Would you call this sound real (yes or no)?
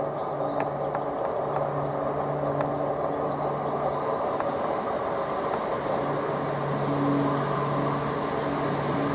yes